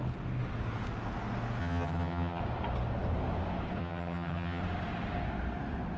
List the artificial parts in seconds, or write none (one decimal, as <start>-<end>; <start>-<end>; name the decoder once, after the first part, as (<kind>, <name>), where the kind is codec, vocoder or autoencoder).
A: 1.6-2.4 (vocoder, HiFi-GAN); 3.8-4.6